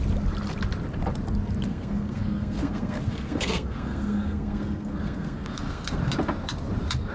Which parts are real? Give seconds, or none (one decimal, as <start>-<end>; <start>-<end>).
0.0-1.7; 6.0-7.1